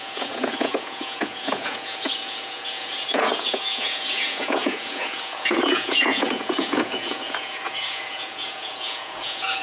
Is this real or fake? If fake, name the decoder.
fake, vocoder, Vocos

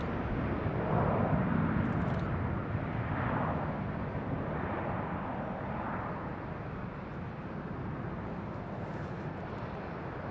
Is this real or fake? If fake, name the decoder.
real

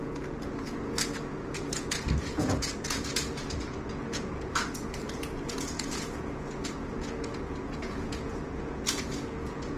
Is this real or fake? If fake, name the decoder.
fake, vocoder, Vocos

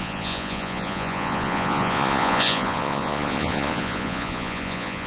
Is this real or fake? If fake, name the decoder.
fake, vocoder, Vocos